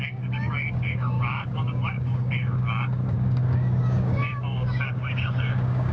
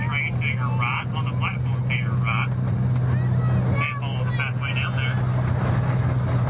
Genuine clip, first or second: second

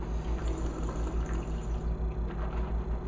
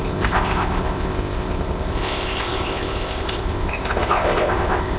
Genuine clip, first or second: first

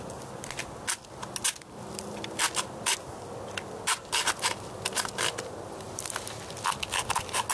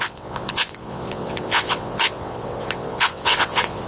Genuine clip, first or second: first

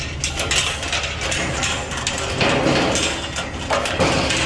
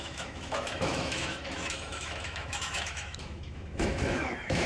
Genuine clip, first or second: first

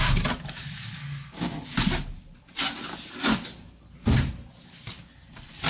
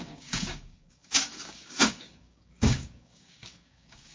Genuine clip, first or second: first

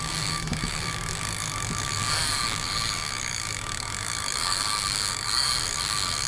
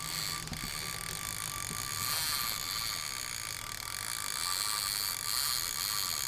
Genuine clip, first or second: second